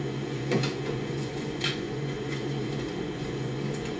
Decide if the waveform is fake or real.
fake